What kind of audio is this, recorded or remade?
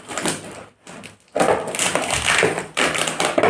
recorded